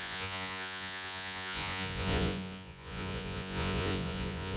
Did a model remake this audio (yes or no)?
yes